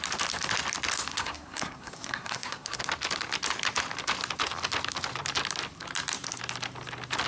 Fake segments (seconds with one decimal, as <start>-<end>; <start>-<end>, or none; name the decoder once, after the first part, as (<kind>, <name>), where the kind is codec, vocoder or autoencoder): 1.1-2.8 (codec, SNAC)